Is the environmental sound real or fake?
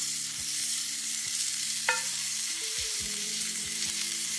fake